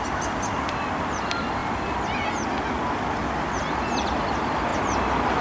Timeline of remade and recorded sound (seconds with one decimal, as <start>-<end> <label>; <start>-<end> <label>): 0.0-5.4 recorded